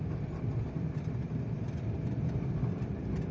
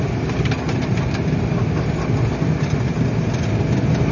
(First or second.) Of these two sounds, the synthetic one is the first